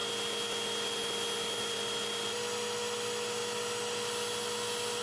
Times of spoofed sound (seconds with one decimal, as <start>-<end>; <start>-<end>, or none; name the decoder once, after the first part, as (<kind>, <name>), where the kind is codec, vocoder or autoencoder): none